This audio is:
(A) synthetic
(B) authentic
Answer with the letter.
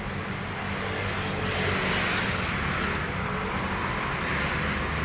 B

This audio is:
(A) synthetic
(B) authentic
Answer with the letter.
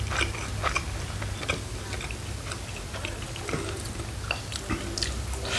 B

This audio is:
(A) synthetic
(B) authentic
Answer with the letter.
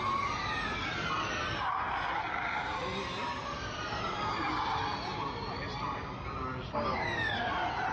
B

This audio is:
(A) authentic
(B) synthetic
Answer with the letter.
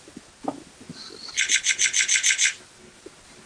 A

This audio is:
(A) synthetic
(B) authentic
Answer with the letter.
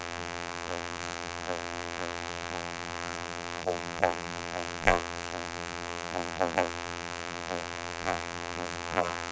A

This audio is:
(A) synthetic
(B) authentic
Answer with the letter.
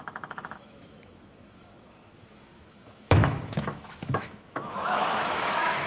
A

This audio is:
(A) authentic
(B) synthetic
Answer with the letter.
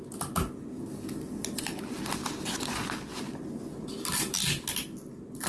A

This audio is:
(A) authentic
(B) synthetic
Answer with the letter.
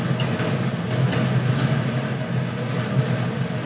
A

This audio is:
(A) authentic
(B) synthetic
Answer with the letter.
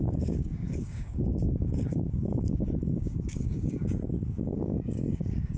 B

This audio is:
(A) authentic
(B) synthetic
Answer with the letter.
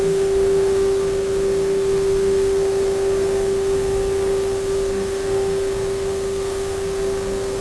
B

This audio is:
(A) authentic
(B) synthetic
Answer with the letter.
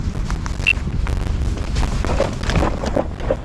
A